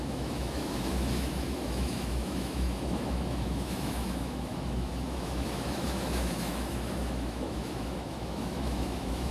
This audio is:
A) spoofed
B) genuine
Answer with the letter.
A